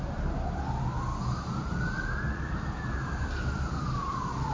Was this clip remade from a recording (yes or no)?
no